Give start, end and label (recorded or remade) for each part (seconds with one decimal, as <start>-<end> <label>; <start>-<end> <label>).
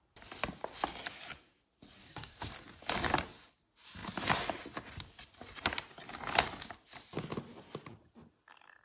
0.0-2.0 recorded; 2.0-2.5 remade; 2.5-8.8 recorded